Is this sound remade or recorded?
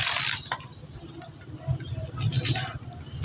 recorded